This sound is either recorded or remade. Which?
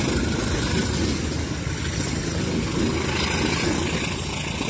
recorded